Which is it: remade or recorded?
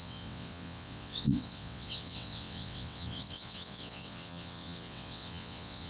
remade